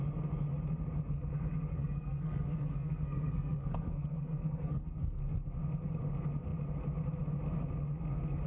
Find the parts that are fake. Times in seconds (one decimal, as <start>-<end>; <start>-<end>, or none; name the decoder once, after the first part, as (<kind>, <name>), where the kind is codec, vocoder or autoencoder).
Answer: 1.7-5.2 (codec, SNAC)